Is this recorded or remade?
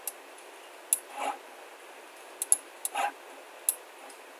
recorded